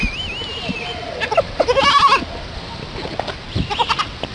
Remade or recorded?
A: recorded